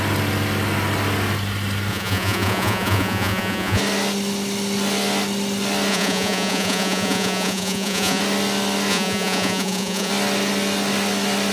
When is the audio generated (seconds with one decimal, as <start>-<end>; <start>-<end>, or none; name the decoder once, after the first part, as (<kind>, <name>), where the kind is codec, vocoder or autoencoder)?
1.9-3.8 (vocoder, Vocos); 5.9-8.2; 8.9-10.1